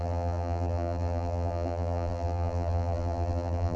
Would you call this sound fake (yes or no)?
yes